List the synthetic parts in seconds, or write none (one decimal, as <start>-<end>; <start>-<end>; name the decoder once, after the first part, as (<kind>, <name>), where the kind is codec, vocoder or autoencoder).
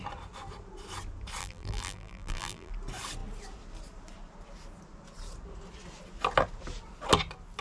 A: 1.4-2.7 (vocoder, BigVGAN v2)